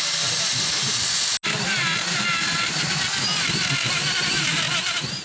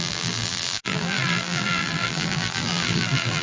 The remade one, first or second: second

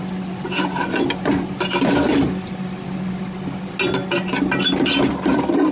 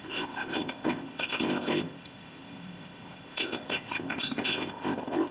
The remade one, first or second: second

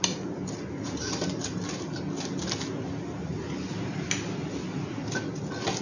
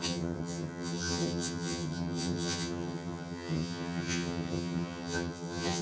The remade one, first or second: second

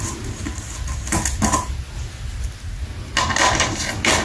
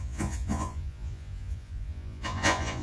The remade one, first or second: second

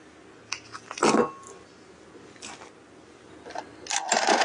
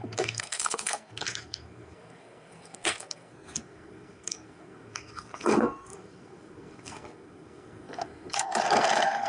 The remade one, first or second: second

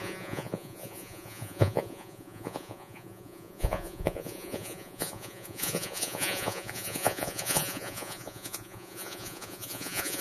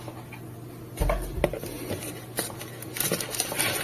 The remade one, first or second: first